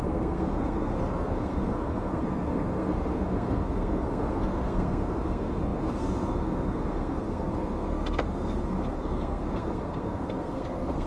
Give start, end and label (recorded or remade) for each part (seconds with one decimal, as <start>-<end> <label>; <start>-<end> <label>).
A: 0.0-11.1 remade